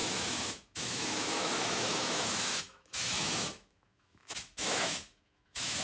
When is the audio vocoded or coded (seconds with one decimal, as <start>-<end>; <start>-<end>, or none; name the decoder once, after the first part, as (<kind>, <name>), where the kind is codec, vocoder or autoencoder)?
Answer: 0.0-5.8 (autoencoder, DAC-VAE)